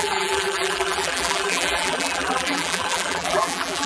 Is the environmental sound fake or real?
fake